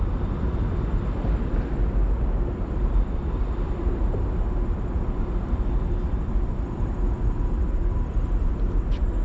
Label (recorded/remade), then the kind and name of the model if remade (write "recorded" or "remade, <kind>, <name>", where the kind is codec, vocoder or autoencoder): remade, vocoder, BigVGAN v2